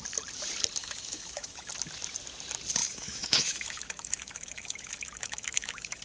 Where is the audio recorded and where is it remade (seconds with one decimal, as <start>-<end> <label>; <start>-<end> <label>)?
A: 0.0-0.8 recorded; 0.8-1.7 remade; 1.7-2.8 recorded; 2.8-6.0 remade